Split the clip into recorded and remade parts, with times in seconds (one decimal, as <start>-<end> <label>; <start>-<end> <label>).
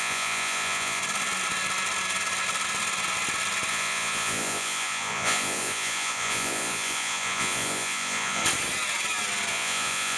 0.0-1.0 remade; 1.0-3.7 recorded; 3.7-8.4 remade; 8.4-9.5 recorded; 9.5-10.2 remade